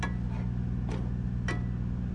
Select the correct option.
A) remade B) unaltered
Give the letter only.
B